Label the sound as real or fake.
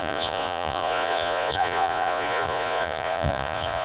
fake